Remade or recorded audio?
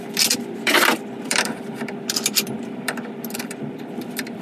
remade